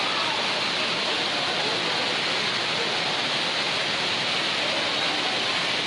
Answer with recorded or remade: recorded